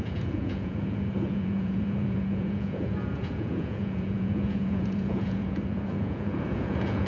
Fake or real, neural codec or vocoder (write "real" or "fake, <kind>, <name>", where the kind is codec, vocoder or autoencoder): fake, vocoder, Vocos